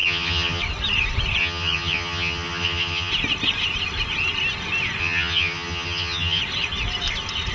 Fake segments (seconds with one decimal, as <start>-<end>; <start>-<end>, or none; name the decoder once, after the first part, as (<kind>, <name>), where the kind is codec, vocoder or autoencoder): 0.0-0.6 (vocoder, HiFi-GAN); 1.4-3.1; 5.0-6.4